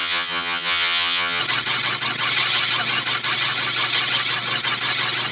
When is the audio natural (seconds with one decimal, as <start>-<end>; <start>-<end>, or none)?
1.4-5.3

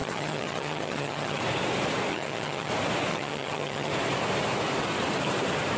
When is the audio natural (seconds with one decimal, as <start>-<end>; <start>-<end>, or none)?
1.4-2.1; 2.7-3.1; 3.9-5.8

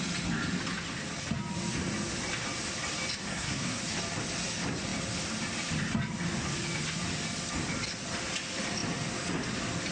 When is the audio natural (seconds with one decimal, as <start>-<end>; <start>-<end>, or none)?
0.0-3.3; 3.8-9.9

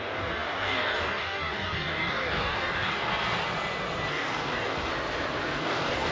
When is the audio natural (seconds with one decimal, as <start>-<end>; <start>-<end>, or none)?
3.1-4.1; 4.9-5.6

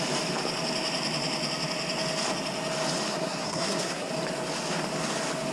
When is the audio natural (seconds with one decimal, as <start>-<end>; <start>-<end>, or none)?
0.0-3.1; 4.1-5.5

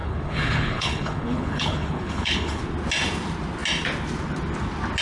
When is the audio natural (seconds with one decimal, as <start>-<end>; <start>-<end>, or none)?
2.6-5.0